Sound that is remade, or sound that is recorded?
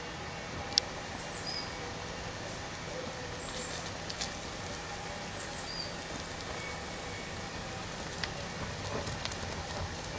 recorded